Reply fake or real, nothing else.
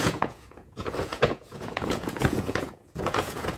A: fake